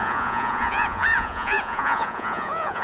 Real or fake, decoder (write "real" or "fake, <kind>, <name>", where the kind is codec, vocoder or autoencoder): fake, vocoder, Vocos